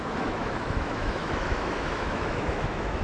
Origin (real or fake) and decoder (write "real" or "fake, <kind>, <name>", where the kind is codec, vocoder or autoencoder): fake, autoencoder, DAC-VAE